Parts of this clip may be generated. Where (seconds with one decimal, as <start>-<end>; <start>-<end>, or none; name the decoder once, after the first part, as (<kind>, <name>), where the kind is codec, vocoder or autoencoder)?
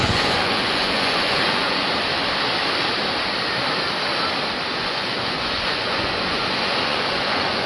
0.0-1.9 (vocoder, Vocos); 4.7-7.7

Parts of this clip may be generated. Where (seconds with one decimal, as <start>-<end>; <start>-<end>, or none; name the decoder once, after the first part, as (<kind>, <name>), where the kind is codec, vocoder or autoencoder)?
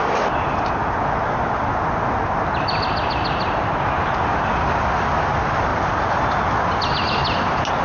none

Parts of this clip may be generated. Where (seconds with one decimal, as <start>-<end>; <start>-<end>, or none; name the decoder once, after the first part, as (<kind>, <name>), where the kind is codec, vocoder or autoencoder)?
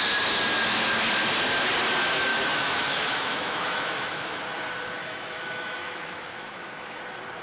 2.3-4.4 (autoencoder, DAC-VAE); 5.0-7.0